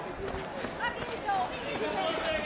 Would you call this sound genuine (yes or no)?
yes